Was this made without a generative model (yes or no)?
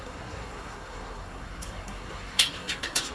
no